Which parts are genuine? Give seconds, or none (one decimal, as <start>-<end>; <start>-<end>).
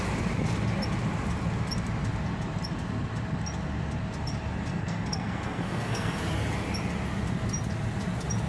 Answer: 0.0-4.7; 6.2-8.5